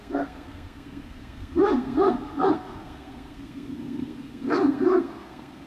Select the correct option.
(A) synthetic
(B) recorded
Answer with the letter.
A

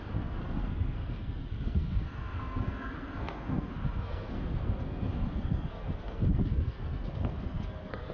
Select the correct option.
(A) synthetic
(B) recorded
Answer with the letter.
A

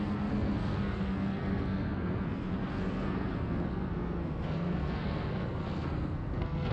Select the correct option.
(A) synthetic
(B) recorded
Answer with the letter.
A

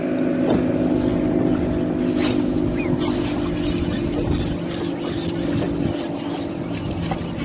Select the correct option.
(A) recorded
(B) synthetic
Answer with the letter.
A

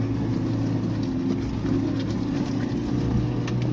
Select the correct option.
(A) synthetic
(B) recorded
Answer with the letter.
B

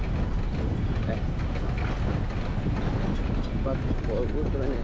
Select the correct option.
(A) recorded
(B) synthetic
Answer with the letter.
A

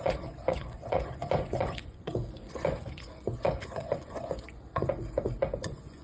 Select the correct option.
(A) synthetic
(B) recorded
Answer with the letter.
A